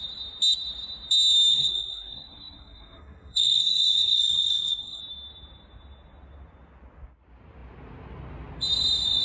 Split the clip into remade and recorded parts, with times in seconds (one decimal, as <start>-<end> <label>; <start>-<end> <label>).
0.0-1.5 recorded; 1.5-5.0 remade; 5.0-9.2 recorded